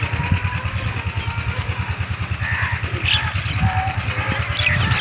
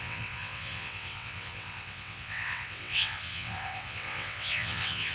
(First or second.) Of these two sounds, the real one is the first